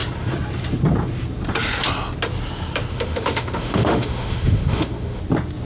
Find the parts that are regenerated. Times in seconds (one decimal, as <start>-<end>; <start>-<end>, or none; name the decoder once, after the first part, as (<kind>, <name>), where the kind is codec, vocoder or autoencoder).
2.9-5.2 (autoencoder, DAC-VAE)